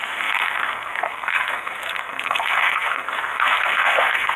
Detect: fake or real fake